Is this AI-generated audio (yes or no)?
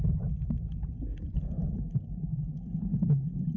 no